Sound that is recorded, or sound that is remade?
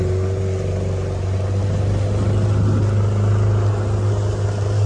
recorded